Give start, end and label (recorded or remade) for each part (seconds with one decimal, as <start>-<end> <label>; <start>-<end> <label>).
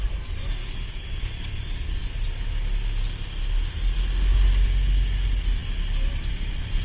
0.0-0.6 recorded; 0.6-1.2 remade; 1.2-6.8 recorded